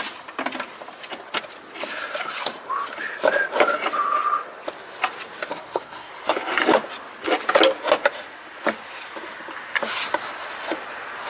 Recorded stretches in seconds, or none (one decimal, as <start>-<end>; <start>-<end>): 0.0-5.5; 6.1-11.3